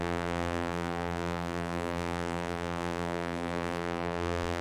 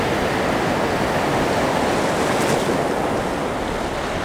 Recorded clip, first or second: second